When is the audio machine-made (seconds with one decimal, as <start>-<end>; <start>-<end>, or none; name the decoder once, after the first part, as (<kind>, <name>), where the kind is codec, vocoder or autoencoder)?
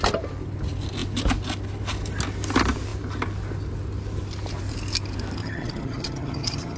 5.4-6.8 (vocoder, HiFi-GAN)